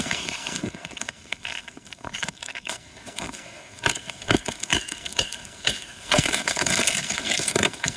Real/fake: fake